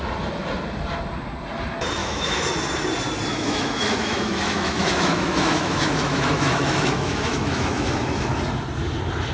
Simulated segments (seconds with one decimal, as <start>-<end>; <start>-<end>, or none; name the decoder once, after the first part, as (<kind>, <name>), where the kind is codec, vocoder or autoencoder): 2.0-2.5 (autoencoder, DAC-VAE); 3.3-8.4